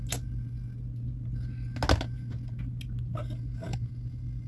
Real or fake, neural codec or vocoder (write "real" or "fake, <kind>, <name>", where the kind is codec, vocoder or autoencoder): real